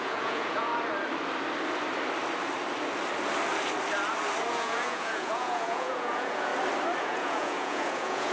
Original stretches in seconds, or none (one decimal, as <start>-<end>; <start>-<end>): 0.7-4.5; 6.5-7.0